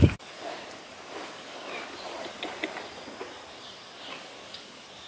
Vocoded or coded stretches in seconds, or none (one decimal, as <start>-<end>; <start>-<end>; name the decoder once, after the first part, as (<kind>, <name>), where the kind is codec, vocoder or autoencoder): 0.0-2.1 (codec, DAC); 3.5-5.1